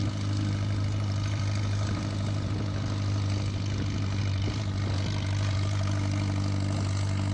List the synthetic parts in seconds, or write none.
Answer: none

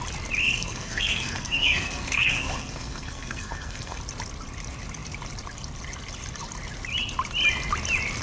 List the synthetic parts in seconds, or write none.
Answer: 0.4-4.0 (codec, SNAC)

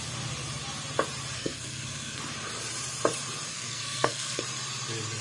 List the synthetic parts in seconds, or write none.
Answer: 1.4-2.2 (codec, SNAC); 3.5-4.4

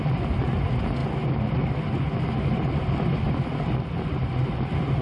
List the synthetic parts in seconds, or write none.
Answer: none

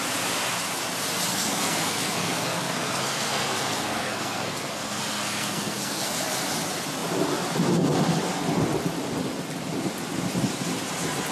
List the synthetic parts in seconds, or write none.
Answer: 1.3-6.2 (codec, SNAC)

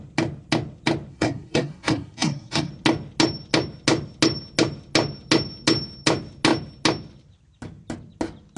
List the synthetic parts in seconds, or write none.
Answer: 1.1-2.7 (codec, SNAC)

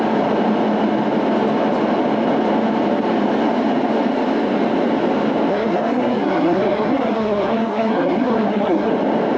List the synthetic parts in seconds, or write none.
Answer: 5.5-8.9 (codec, SNAC)

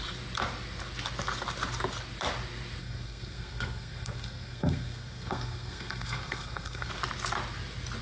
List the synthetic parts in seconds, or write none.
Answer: 2.8-6.9 (codec, SNAC)